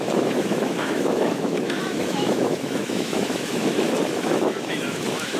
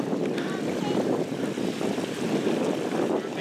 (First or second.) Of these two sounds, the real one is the second